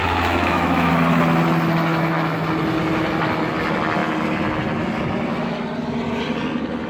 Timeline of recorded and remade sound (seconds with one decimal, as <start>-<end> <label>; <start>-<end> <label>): 0.0-0.9 remade; 0.9-1.9 recorded; 1.9-2.5 remade; 2.5-6.9 recorded